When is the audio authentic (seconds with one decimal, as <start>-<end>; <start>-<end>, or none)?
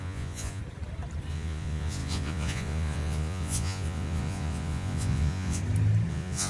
0.6-1.3; 5.6-6.1